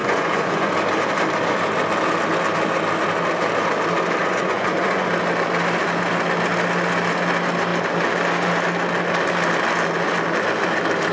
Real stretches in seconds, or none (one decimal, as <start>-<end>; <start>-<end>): 0.7-4.2; 5.1-11.1